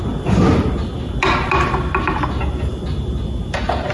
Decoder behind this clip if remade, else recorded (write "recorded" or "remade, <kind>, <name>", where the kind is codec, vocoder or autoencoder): recorded